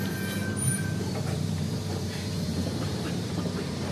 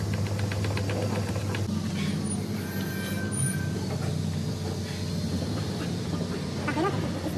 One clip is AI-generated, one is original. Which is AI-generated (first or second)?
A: first